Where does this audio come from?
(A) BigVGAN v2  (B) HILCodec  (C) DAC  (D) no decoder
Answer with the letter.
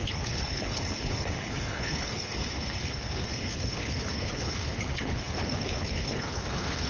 B